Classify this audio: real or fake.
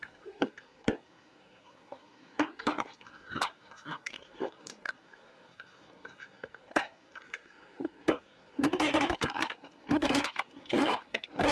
fake